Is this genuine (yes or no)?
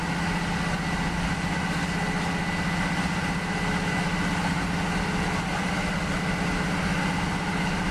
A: yes